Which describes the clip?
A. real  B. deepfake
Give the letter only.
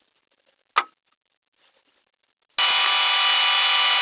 A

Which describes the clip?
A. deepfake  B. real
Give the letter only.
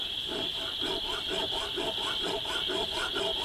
A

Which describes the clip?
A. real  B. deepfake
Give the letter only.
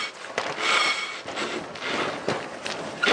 A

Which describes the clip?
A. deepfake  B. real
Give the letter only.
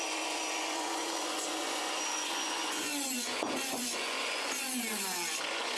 A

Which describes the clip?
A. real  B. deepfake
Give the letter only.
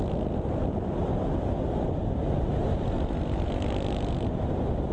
A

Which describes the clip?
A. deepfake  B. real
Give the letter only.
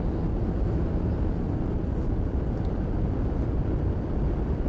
B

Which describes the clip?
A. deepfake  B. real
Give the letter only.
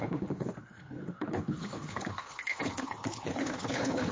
A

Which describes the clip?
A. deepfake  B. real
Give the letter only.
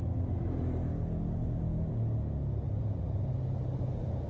B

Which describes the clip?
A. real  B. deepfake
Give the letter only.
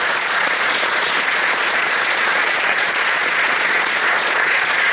B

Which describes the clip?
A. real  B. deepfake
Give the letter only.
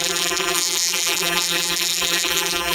B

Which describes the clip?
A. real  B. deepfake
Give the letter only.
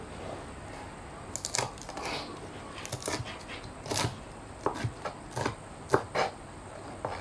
A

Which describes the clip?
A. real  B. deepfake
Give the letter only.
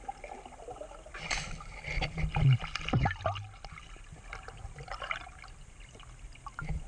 A